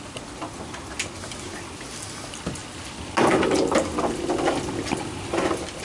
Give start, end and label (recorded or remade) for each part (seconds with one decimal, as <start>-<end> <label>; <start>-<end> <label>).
0.0-5.8 recorded

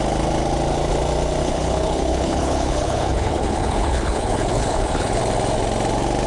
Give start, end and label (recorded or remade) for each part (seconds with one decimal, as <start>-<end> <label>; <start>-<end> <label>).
0.0-1.4 recorded; 1.4-5.2 remade; 5.2-6.3 recorded